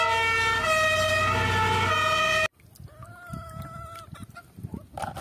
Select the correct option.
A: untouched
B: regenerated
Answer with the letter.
A